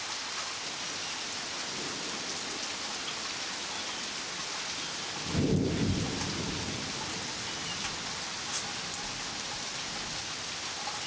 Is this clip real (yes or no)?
yes